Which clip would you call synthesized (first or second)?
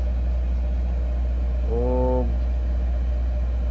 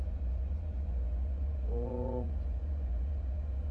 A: second